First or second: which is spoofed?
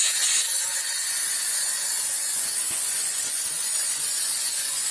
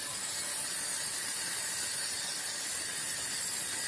first